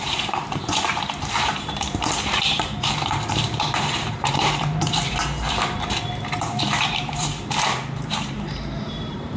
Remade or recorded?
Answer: remade